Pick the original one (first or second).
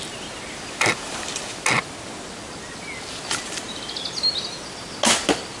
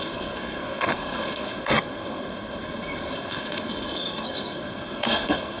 first